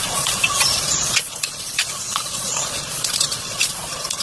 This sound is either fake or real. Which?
fake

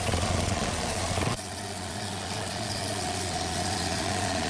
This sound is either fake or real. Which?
fake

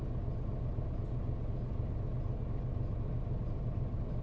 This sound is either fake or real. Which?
real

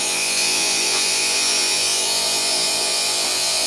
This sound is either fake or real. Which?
fake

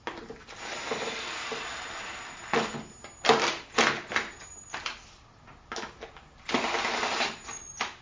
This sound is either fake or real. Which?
real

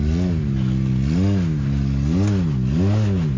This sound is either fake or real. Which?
real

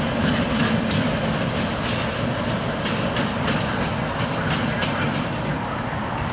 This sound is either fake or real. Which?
real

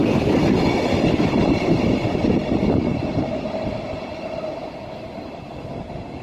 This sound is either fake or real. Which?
real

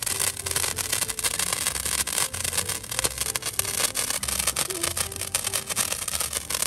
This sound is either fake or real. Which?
real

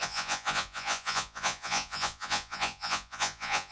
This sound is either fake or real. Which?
fake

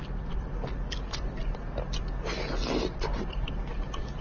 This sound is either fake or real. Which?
real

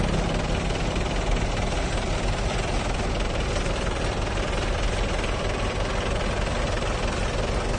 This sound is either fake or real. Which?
real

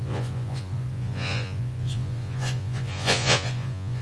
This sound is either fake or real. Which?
fake